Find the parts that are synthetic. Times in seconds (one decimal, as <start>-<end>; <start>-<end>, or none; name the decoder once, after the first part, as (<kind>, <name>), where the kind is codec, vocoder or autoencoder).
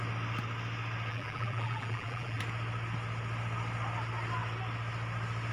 1.1-2.4 (vocoder, BigVGAN v2)